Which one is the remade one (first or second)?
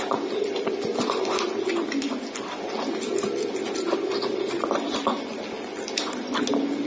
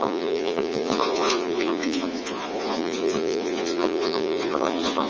second